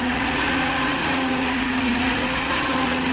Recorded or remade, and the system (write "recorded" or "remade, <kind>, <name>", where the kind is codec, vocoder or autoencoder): remade, vocoder, Vocos